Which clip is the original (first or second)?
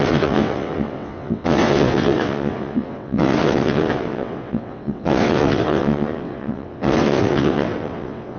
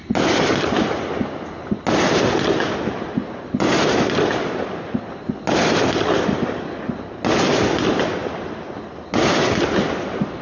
second